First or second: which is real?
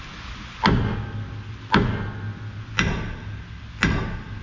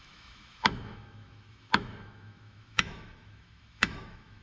first